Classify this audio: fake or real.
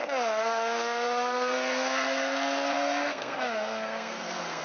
fake